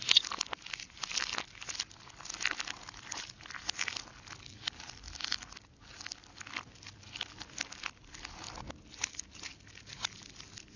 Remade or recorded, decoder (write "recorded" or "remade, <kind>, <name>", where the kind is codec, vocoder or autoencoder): recorded